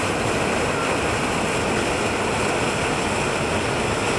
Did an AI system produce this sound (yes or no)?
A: no